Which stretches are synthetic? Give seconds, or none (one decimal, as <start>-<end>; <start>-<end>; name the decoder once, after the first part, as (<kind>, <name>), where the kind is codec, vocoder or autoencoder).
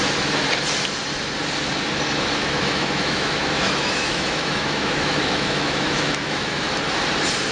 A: 2.4-6.7 (autoencoder, DAC-VAE)